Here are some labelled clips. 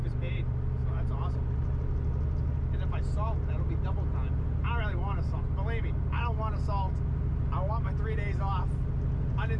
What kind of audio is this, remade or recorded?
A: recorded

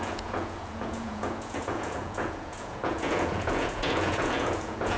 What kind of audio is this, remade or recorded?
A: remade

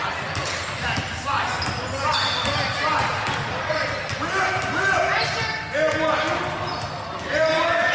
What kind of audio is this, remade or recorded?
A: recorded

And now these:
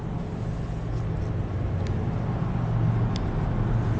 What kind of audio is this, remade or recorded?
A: recorded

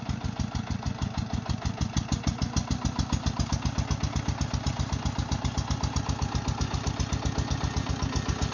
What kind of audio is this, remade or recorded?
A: recorded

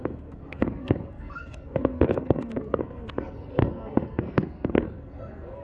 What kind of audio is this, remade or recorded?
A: remade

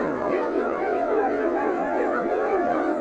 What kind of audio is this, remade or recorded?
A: remade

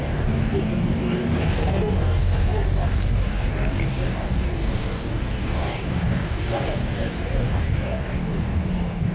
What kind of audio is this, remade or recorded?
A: remade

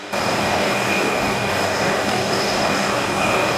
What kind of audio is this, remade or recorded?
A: remade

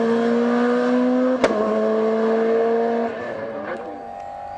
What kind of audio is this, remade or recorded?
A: recorded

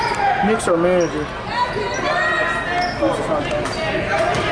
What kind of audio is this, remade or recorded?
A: recorded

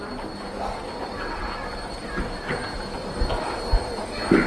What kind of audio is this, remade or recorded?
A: recorded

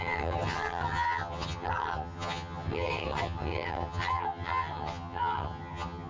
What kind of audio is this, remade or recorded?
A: remade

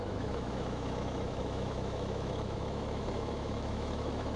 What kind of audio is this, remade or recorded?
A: remade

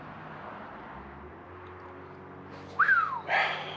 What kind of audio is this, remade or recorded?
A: recorded